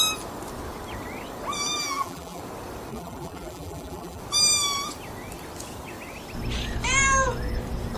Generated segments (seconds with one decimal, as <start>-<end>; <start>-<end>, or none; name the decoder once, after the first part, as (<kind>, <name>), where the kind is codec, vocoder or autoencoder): 1.8-2.4 (vocoder, BigVGAN v2); 2.9-4.2